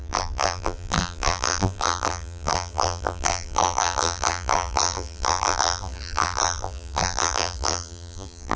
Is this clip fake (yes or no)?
yes